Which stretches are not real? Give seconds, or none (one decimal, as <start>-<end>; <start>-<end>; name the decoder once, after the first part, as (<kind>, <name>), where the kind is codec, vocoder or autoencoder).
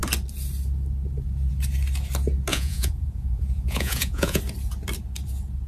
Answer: 2.5-4.4 (vocoder, Vocos)